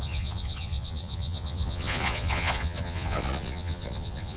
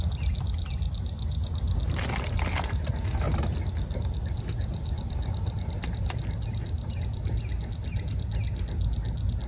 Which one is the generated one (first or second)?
first